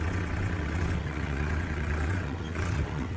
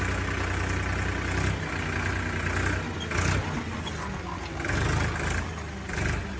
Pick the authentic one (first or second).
second